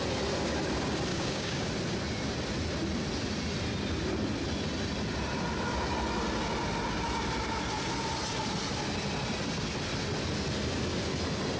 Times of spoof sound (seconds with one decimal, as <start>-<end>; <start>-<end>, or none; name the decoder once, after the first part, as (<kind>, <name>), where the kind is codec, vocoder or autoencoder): 1.1-1.7 (codec, DAC)

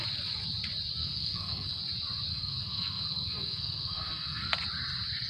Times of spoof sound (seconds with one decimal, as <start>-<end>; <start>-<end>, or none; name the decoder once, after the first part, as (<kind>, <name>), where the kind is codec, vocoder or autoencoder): 1.0-1.8 (codec, SNAC); 2.3-4.5

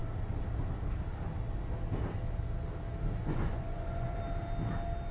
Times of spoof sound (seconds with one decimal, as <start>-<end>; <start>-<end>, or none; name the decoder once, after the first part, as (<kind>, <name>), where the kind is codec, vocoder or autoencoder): 3.2-4.2 (vocoder, Vocos)